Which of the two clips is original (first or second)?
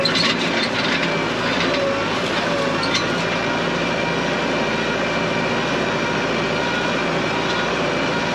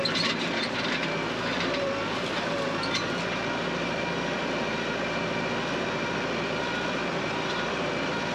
first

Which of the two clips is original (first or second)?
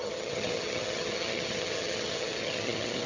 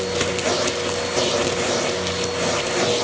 second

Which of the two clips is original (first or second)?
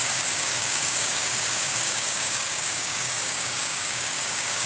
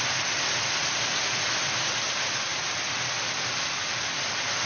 second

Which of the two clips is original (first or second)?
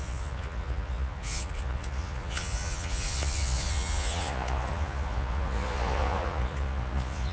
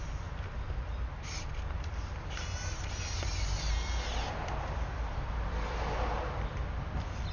second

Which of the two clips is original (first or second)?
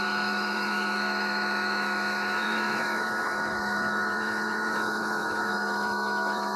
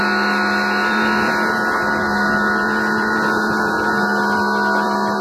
second